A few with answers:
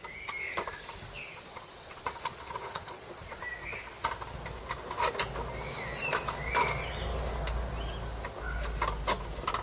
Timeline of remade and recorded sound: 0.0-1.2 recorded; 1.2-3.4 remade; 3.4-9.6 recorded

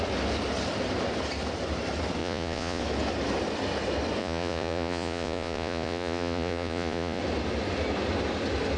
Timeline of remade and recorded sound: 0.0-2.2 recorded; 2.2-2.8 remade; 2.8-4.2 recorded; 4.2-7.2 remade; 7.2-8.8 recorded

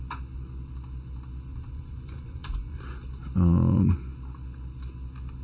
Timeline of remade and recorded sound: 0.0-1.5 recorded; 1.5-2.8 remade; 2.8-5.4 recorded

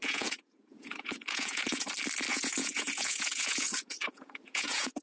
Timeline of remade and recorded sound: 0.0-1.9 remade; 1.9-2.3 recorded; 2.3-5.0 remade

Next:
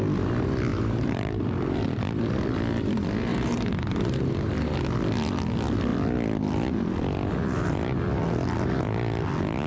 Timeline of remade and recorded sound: 0.0-0.7 recorded; 0.7-1.8 remade; 1.8-3.3 recorded; 3.3-4.5 remade; 4.5-9.7 recorded